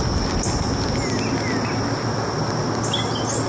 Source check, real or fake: real